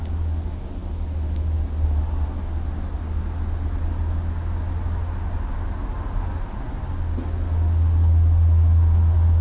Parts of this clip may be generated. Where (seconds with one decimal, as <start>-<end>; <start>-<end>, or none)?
none

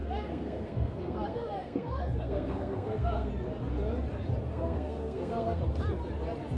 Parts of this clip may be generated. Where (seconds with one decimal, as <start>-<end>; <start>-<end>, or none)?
0.0-3.3; 4.5-5.6

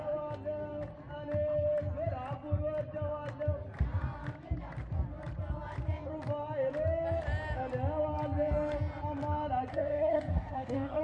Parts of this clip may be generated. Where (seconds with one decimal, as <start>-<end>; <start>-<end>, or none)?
9.7-11.0

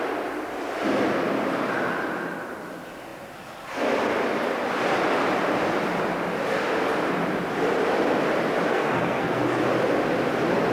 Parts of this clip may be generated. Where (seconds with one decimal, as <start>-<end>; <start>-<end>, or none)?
8.7-9.6